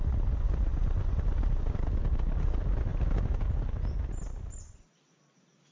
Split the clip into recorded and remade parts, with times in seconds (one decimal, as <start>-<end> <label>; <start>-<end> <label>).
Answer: 0.0-5.7 recorded